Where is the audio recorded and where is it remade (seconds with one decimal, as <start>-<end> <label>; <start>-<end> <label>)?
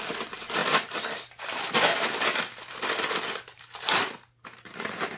0.0-0.6 remade; 0.6-1.4 recorded; 1.4-1.9 remade; 1.9-3.6 recorded; 3.6-5.2 remade